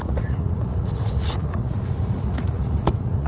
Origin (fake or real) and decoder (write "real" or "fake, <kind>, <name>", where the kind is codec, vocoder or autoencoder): fake, vocoder, Vocos